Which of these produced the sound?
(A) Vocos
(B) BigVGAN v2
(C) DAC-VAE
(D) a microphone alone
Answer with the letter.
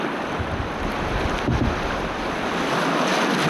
D